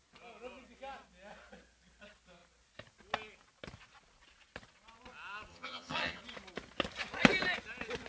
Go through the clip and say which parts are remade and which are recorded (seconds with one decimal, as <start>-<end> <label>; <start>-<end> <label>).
0.0-5.5 recorded; 5.5-6.2 remade; 6.2-8.1 recorded